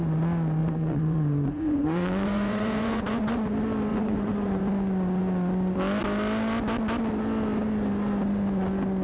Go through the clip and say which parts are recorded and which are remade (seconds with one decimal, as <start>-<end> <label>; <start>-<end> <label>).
0.0-0.6 recorded; 0.6-3.3 remade; 3.3-3.9 recorded; 3.9-4.6 remade; 4.6-9.0 recorded